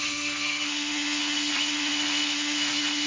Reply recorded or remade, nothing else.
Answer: remade